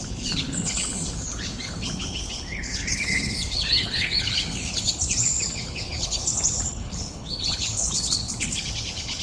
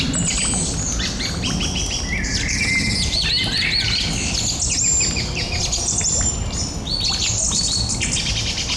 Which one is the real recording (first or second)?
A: second